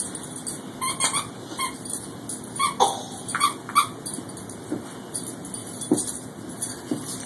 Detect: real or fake real